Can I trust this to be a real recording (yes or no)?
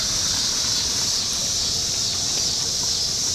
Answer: no